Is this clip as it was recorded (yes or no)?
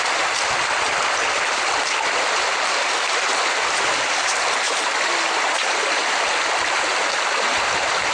yes